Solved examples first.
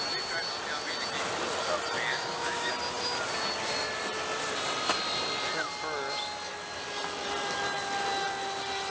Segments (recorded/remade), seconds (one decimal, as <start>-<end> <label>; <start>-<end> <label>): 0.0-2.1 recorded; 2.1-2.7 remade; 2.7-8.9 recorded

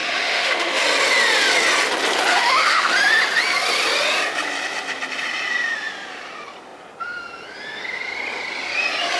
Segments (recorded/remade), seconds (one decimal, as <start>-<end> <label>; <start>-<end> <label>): 0.0-0.8 remade; 0.8-2.3 recorded; 2.3-2.9 remade; 2.9-9.2 recorded

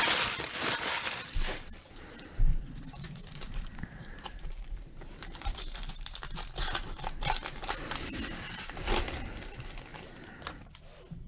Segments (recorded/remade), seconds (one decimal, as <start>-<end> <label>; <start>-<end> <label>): 0.0-2.5 recorded; 2.5-5.9 remade; 5.9-9.9 recorded; 9.9-10.5 remade; 10.5-11.3 recorded

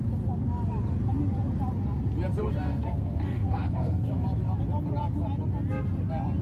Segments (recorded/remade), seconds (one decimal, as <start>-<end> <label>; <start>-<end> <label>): 0.0-2.4 recorded; 2.4-4.1 remade; 4.1-6.4 recorded